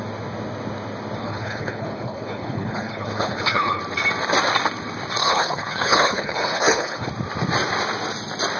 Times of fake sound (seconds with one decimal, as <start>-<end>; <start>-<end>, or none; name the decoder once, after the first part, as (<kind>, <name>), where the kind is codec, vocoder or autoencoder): 1.2-3.8 (codec, HILCodec); 5.2-7.1